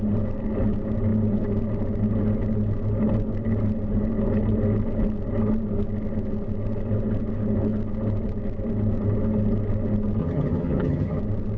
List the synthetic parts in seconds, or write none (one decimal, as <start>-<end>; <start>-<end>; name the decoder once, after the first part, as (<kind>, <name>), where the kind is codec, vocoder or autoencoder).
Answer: 10.2-11.2 (vocoder, HiFi-GAN)